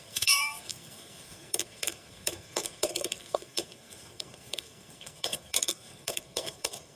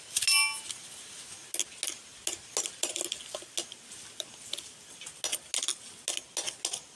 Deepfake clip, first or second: first